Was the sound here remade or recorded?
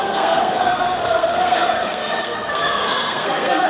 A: remade